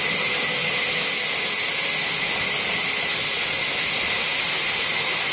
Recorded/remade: recorded